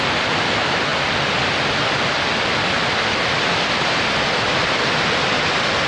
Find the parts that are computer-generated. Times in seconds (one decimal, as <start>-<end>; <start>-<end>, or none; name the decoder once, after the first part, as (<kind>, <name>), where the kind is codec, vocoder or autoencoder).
none